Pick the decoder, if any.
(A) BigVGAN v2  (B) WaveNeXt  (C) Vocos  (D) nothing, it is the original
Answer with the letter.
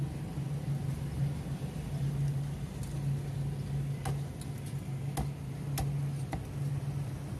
D